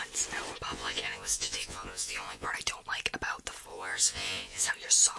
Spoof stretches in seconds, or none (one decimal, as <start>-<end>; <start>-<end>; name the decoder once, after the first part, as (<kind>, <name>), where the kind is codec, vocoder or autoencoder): 0.7-2.5 (vocoder, Vocos); 3.7-4.7

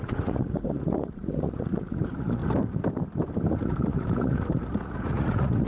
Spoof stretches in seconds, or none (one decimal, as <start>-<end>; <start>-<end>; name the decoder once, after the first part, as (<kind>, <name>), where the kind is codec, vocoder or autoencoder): 0.0-2.4 (vocoder, Vocos); 3.5-5.7

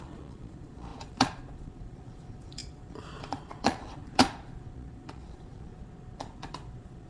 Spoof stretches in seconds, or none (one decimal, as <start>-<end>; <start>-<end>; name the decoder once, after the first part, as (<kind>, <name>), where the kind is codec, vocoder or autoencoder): 0.0-7.1 (vocoder, Vocos)

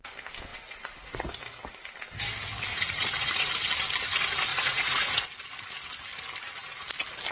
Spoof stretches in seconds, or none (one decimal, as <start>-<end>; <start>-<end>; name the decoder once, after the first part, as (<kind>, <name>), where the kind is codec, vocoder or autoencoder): 0.5-1.2 (vocoder, Vocos); 2.7-3.5; 4.5-5.2

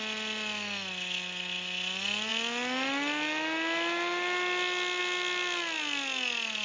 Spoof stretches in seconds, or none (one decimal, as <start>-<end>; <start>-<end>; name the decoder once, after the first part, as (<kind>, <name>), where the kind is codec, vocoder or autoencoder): none

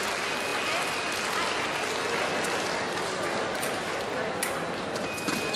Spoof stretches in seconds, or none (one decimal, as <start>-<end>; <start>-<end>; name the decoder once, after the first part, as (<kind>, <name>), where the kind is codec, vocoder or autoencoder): none